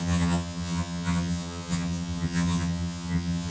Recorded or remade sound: remade